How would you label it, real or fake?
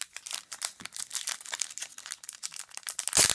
real